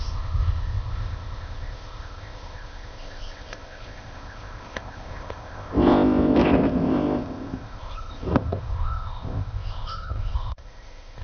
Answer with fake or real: fake